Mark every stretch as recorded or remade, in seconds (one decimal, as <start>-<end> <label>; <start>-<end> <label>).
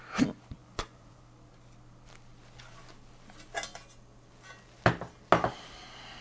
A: 0.0-0.6 recorded; 0.6-1.2 remade; 1.2-6.2 recorded